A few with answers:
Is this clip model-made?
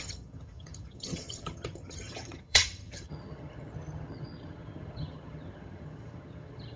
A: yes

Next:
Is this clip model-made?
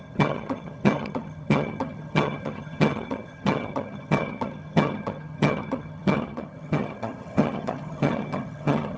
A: yes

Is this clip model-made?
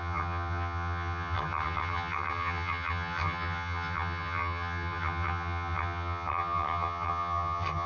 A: yes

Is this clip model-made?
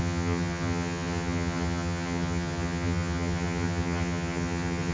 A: yes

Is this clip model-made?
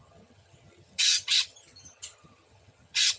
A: yes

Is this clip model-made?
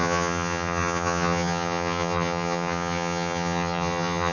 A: yes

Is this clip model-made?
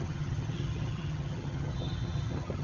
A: yes